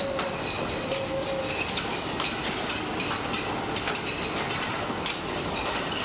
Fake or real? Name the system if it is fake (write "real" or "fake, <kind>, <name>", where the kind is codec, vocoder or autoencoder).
real